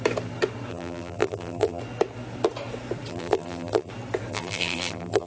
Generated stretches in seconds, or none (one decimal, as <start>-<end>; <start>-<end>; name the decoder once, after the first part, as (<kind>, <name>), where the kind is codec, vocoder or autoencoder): 0.7-1.8 (vocoder, BigVGAN v2); 3.1-3.9; 4.3-5.3